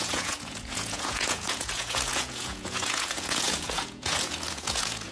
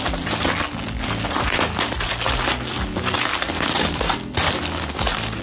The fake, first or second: first